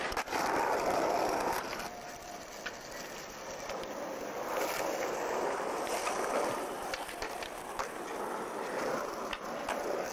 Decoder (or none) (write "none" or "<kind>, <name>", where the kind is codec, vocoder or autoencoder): none